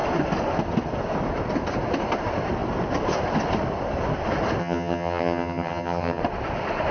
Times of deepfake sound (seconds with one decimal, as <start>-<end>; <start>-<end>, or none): 4.6-6.2